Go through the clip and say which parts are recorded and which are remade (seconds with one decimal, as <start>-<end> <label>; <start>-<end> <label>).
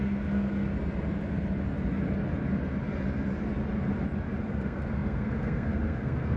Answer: 0.0-0.7 remade; 0.7-4.5 recorded; 4.5-6.4 remade